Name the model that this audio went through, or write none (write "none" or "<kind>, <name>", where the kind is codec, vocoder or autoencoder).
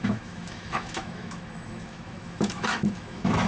autoencoder, DAC-VAE